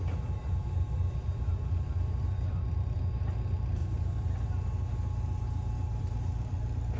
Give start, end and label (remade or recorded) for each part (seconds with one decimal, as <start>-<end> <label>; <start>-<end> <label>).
0.0-3.8 remade; 3.8-6.0 recorded; 6.0-7.0 remade